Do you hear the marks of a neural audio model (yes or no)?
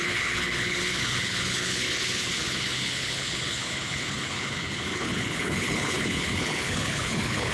yes